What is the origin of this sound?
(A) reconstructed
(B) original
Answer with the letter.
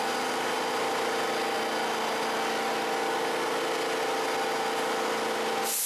B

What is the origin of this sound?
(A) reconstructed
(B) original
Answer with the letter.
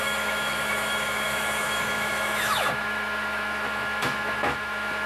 A